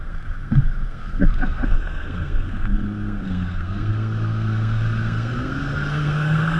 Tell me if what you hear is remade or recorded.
remade